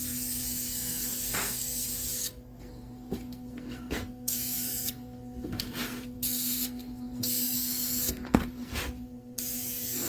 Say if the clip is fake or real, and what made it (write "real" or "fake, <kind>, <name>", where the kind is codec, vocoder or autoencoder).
fake, codec, SNAC